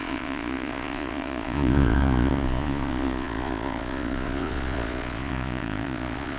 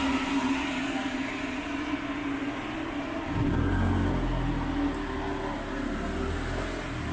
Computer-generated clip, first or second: first